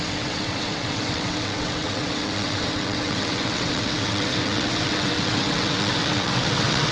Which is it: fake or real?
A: fake